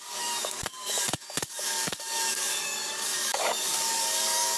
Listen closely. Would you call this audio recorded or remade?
remade